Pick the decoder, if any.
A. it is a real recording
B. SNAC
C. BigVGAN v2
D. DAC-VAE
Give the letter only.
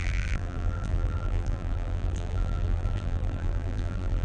C